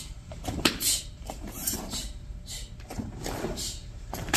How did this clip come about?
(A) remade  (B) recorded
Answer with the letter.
A